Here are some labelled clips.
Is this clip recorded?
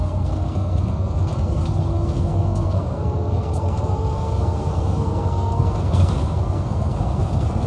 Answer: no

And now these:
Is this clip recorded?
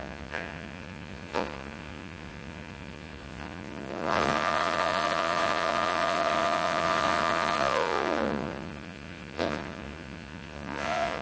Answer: no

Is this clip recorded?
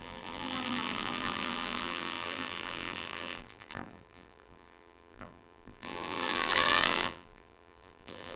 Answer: no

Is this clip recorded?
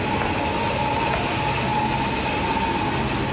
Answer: yes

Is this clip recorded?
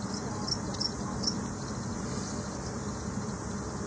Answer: yes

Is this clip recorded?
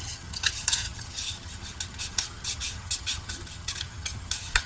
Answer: no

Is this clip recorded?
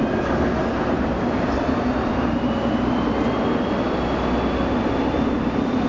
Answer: yes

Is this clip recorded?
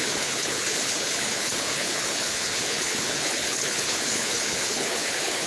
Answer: no